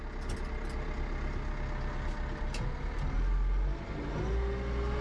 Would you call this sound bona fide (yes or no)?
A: yes